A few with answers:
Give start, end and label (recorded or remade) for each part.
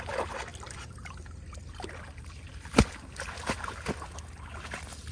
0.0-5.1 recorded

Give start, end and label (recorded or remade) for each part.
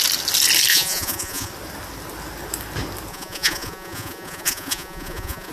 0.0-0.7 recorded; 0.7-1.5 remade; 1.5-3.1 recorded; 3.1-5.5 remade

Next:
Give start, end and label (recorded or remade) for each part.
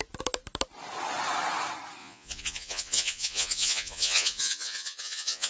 0.0-2.0 recorded; 2.0-5.5 remade